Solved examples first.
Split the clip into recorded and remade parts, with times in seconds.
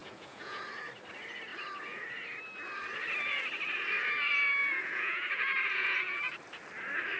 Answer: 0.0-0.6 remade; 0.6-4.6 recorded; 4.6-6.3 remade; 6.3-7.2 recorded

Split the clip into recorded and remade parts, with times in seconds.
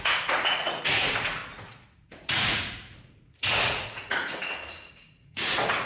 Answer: 0.0-5.9 remade